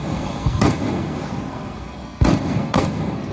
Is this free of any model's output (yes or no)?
no